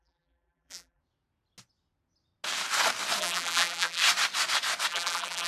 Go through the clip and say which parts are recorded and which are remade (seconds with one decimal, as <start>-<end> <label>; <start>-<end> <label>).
0.0-1.0 remade; 1.0-3.2 recorded; 3.2-4.0 remade; 4.0-4.9 recorded; 4.9-5.5 remade